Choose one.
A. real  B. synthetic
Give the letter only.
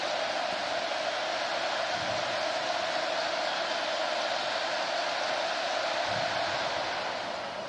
A